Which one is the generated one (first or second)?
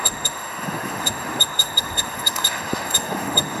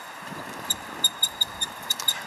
first